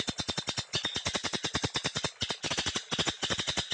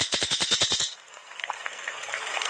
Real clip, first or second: first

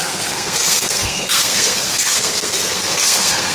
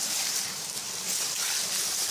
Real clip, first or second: second